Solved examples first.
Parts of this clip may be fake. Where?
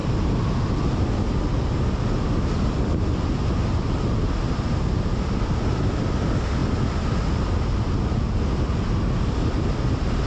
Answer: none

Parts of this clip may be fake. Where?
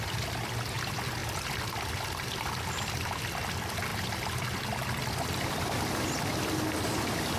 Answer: none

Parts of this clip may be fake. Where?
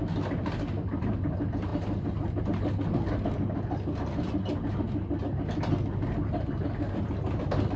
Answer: none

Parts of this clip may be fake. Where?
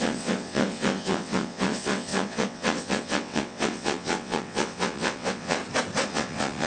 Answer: 0.0-5.6; 6.1-6.7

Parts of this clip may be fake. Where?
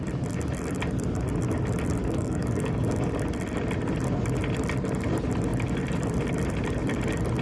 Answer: 2.0-3.1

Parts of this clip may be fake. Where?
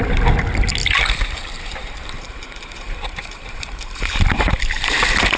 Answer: 0.8-4.0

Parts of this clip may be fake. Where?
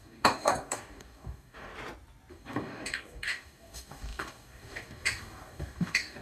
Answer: 0.0-1.7; 2.3-6.2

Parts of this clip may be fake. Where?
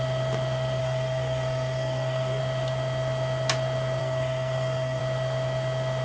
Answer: 0.8-2.4; 4.0-5.0